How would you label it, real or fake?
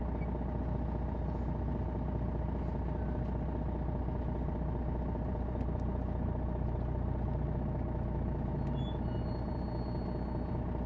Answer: real